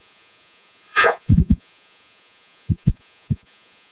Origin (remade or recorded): remade